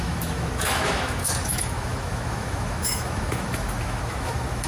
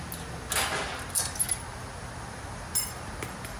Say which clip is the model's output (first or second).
first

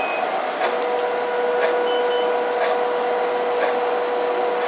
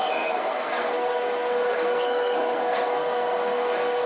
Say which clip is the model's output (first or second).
second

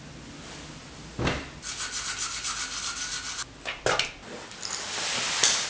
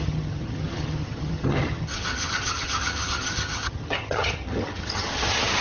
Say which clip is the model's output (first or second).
second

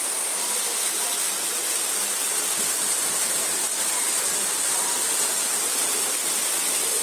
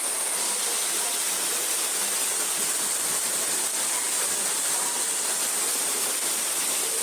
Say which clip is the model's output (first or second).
first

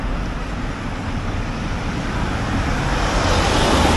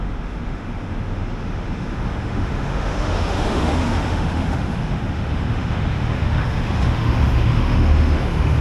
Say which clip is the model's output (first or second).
second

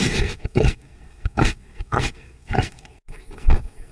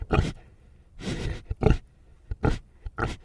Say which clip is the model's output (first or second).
first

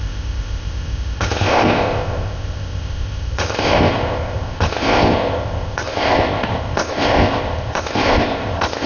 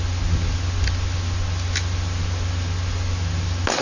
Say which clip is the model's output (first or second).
first